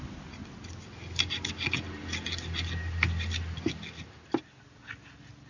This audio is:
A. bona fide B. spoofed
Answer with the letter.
A